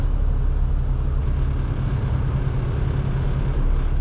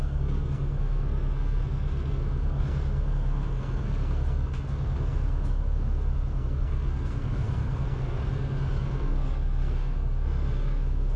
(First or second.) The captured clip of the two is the first